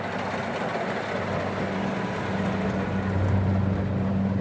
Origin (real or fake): real